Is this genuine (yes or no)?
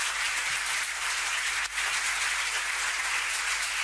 yes